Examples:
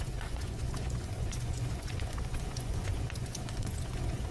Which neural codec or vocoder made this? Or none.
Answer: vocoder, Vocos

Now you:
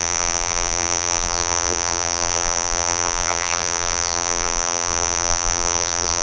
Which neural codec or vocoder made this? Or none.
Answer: vocoder, BigVGAN v2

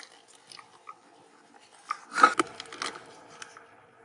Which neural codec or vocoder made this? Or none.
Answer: none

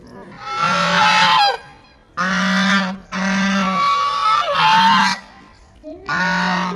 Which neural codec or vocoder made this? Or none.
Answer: none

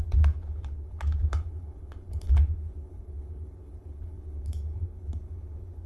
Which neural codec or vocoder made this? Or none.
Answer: codec, HILCodec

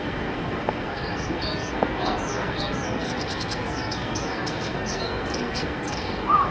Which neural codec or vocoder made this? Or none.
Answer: codec, SNAC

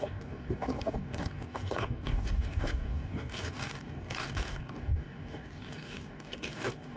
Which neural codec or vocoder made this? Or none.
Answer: codec, DAC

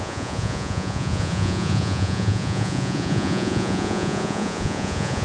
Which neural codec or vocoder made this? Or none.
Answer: vocoder, Vocos